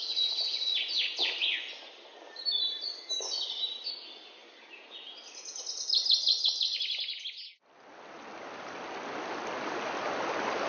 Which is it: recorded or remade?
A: recorded